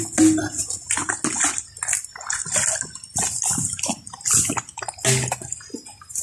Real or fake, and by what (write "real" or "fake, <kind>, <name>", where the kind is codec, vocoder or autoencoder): real